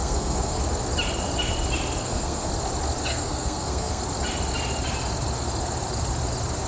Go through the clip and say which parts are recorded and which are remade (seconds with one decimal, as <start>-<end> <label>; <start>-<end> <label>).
0.0-0.6 remade; 0.6-2.0 recorded; 2.0-2.5 remade; 2.5-3.1 recorded; 3.1-4.0 remade; 4.0-6.7 recorded